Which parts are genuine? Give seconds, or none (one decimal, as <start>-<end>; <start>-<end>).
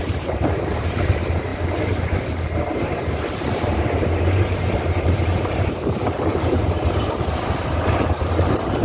none